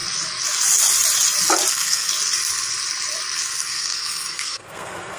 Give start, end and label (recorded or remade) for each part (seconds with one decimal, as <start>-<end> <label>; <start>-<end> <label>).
0.0-1.7 recorded; 1.7-2.1 remade; 2.1-3.4 recorded; 3.4-5.2 remade